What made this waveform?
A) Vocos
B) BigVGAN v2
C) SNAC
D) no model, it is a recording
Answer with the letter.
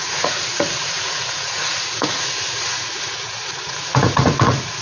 A